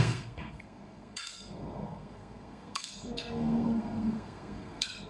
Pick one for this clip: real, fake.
fake